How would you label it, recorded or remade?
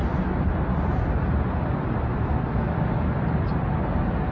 recorded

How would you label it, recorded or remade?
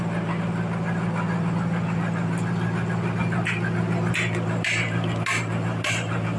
recorded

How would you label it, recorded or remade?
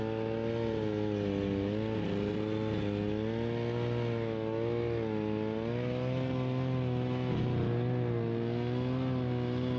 recorded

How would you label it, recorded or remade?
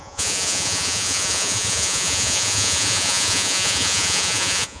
remade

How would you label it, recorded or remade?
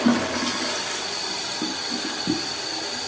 recorded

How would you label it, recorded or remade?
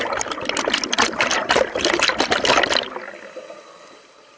recorded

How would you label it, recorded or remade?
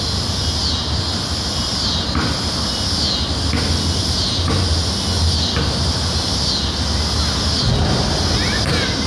recorded